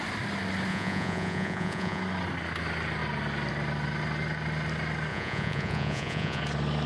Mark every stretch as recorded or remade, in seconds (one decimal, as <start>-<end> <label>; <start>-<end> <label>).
0.0-0.7 recorded; 0.7-2.0 remade; 2.0-5.1 recorded; 5.1-6.4 remade; 6.4-6.9 recorded